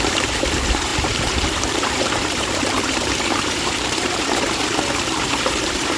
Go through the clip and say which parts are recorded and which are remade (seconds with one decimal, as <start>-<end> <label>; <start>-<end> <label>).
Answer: 0.0-4.6 remade; 4.6-5.1 recorded; 5.1-6.0 remade